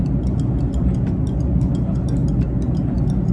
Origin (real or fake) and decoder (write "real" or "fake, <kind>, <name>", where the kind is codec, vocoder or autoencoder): real